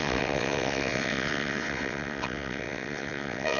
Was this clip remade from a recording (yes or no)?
yes